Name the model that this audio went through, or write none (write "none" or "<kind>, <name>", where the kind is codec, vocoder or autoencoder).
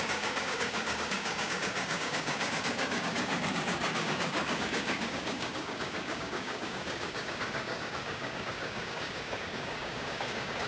codec, DAC